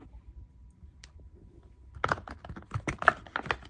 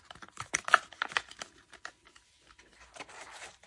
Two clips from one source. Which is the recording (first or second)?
first